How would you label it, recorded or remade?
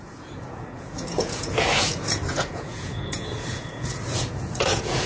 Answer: remade